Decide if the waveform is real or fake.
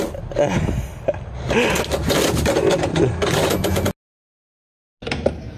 real